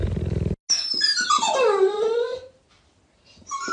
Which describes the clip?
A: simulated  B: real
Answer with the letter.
B